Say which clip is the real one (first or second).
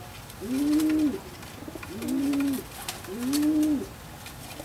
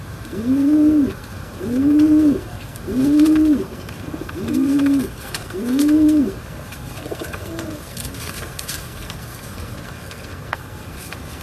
first